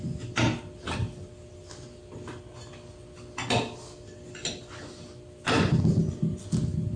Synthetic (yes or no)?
no